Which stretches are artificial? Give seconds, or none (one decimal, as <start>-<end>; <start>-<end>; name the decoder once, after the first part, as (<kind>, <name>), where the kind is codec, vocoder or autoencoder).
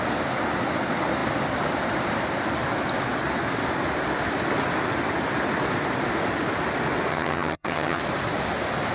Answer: 7.1-8.0 (vocoder, HiFi-GAN)